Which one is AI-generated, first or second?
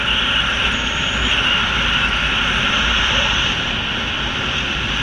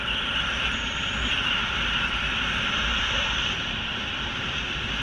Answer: second